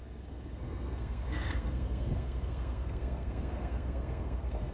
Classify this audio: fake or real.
fake